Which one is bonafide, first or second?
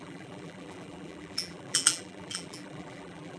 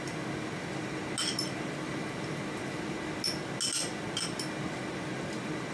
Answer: second